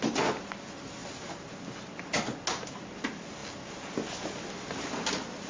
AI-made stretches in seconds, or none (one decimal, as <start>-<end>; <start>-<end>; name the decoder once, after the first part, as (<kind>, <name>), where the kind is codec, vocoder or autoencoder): none